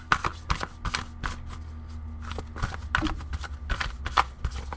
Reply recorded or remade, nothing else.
recorded